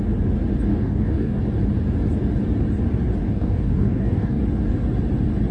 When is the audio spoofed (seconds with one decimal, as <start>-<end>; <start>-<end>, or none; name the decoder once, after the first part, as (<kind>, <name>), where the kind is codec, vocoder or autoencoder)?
0.7-1.4 (codec, DAC); 3.2-4.4